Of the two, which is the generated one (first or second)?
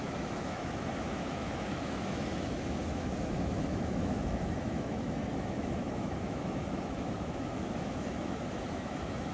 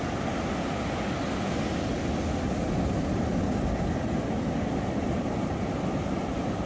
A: first